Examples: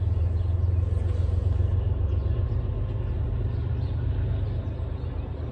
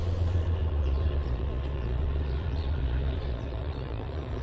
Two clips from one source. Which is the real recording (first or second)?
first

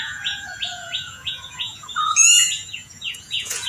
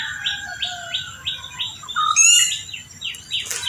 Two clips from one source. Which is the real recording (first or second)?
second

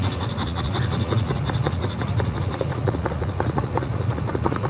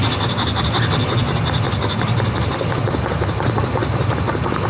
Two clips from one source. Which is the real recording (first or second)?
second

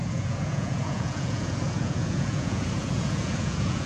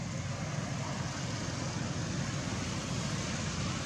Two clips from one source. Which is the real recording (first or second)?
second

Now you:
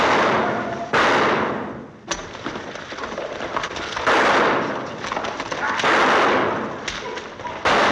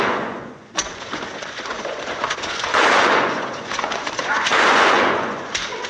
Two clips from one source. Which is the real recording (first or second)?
first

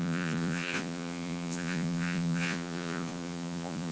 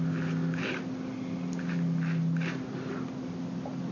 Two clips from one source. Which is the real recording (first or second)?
second